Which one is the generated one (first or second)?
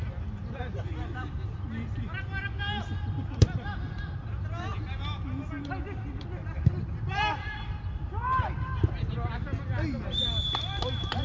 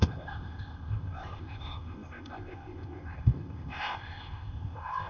second